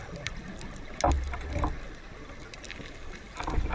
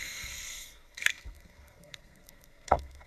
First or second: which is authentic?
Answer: first